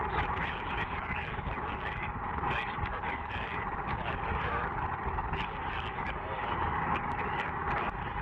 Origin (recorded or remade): remade